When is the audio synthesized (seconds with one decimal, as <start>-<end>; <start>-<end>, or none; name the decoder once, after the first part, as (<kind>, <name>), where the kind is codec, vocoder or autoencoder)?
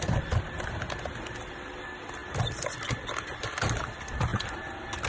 none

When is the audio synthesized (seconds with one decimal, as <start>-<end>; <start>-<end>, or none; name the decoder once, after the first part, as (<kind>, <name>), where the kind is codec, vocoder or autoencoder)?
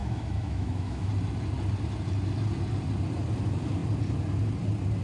0.0-1.1 (autoencoder, DAC-VAE)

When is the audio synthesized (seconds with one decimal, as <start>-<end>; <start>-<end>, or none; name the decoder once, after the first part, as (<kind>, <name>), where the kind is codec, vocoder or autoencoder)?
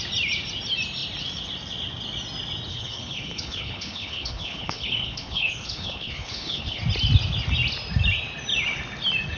2.7-6.8 (codec, HILCodec)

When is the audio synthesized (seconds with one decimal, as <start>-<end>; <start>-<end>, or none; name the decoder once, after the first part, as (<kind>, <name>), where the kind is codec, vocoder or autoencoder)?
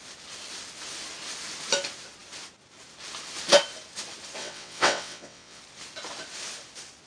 4.4-5.6 (vocoder, WaveNeXt)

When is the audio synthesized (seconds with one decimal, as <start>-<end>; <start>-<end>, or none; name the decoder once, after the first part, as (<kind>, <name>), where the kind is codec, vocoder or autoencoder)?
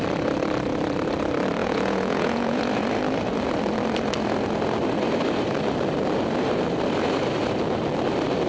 1.6-2.6 (vocoder, Vocos)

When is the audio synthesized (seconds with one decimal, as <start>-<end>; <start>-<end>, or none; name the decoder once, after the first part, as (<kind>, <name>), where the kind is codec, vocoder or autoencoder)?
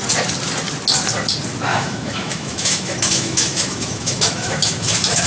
1.7-5.3 (autoencoder, DAC-VAE)